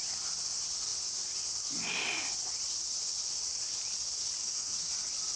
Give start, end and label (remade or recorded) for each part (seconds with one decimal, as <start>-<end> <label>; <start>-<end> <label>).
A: 0.0-4.4 recorded; 4.4-4.9 remade; 4.9-5.4 recorded